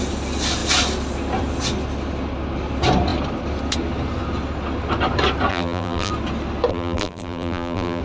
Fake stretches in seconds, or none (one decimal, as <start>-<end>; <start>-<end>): 5.5-6.1; 6.7-8.0